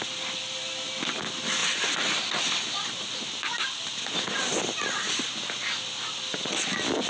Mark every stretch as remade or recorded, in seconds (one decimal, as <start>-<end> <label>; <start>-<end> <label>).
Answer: 0.0-7.1 recorded

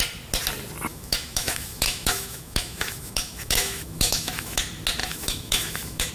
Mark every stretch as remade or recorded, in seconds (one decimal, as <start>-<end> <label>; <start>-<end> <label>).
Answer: 0.0-0.9 recorded; 0.9-4.6 remade; 4.6-5.0 recorded; 5.0-6.1 remade